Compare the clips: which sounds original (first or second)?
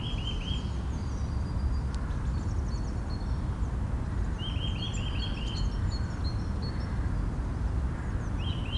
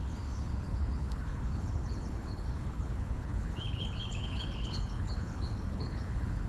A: first